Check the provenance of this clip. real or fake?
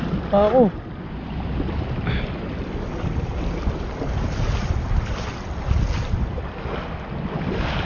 real